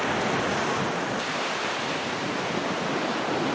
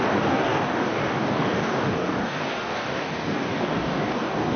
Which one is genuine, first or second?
first